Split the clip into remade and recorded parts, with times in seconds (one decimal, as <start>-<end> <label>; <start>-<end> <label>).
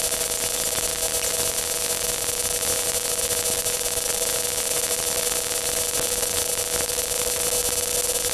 0.0-8.3 recorded